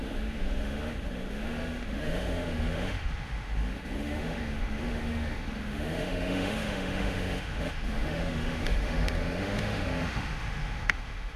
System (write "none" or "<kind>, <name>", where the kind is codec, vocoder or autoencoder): autoencoder, DAC-VAE